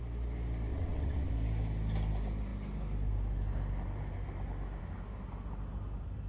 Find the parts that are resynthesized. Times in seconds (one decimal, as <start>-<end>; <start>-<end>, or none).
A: 0.7-1.3